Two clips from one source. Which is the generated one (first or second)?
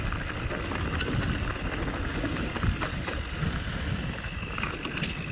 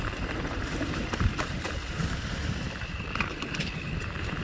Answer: second